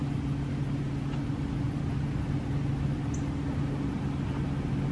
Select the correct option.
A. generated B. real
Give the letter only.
B